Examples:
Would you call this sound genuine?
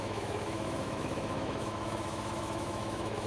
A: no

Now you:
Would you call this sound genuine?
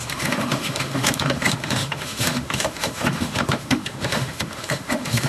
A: no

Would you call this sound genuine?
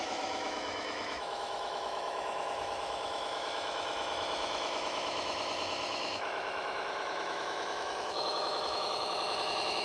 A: no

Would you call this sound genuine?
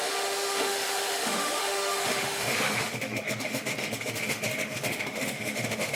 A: no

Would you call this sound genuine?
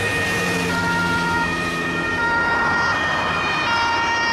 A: yes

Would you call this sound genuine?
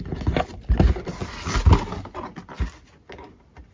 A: yes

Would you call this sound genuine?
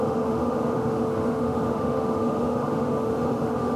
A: no